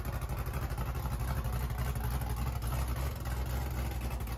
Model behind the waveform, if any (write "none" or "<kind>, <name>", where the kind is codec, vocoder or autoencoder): none